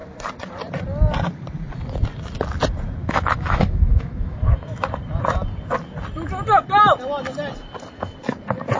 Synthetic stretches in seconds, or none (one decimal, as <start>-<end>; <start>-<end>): 3.0-4.9